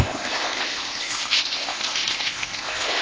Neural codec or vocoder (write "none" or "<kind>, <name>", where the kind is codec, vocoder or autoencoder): codec, ZipCodec